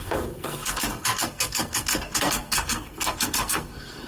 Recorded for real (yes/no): no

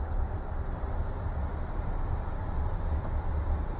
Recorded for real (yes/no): yes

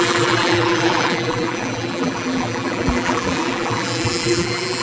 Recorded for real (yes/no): no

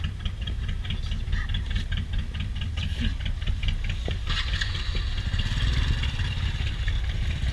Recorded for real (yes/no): yes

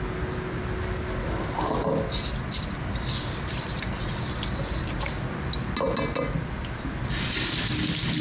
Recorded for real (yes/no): yes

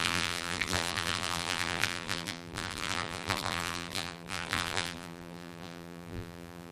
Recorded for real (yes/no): no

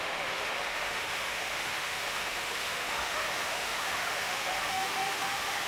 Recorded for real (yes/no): no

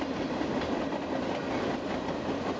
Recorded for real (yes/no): yes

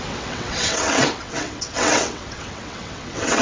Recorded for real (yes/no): no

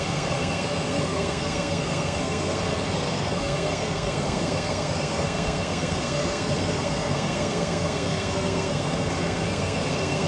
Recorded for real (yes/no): no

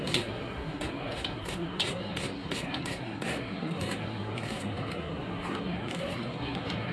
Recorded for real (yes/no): no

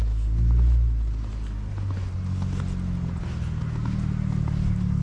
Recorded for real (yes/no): yes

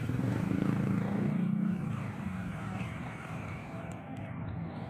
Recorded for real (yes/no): no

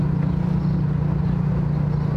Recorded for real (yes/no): yes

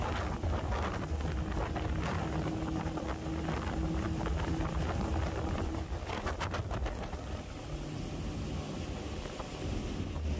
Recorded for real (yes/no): yes